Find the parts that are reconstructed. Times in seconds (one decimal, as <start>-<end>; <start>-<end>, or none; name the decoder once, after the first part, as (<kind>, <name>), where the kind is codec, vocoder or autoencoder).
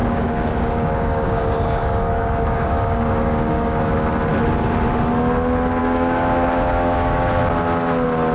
0.0-3.9 (codec, DAC); 5.8-7.4